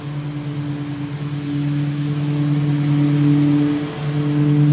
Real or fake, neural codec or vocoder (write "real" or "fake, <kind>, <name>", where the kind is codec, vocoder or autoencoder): real